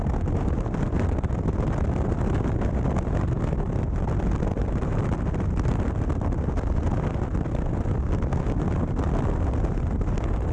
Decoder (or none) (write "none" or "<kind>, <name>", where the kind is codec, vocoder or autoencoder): vocoder, BigVGAN v2